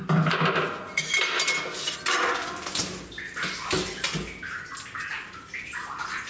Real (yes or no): yes